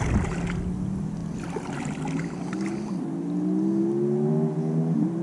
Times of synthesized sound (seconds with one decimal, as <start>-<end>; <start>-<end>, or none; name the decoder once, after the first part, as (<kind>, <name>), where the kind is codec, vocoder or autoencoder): none